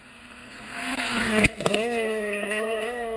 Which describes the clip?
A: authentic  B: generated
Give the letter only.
B